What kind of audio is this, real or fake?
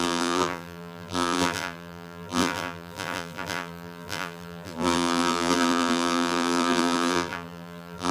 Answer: fake